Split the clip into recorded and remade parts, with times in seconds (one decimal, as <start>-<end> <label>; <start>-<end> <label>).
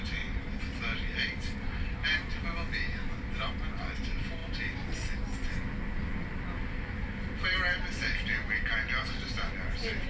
0.0-2.3 remade; 2.3-3.2 recorded; 3.2-4.4 remade; 4.4-6.1 recorded; 6.1-10.1 remade